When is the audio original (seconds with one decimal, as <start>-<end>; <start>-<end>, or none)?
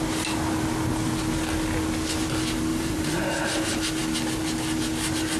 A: 0.0-2.7; 3.4-5.4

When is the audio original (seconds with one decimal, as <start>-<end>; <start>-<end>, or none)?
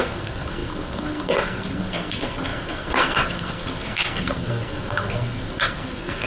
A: none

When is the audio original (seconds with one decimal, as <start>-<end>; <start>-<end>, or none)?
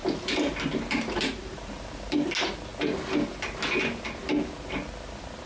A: 2.3-5.5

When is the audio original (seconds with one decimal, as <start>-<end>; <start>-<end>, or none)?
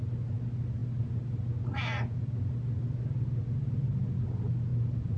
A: 0.0-5.2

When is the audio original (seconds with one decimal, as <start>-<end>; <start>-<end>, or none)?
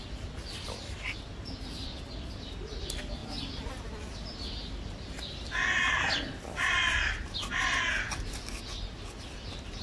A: 0.0-9.8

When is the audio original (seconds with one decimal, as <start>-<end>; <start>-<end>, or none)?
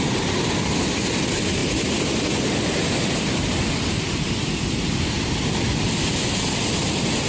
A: 0.0-7.3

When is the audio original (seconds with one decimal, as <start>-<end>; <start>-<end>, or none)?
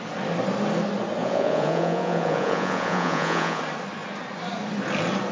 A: 0.0-1.2; 3.6-5.3